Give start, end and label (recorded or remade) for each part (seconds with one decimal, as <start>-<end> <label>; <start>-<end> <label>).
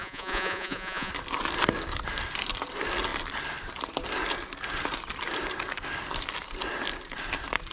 0.0-1.1 remade; 1.1-7.7 recorded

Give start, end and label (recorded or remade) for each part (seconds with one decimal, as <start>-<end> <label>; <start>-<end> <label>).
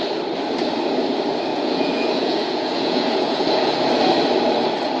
0.0-1.5 recorded; 1.5-3.8 remade; 3.8-5.0 recorded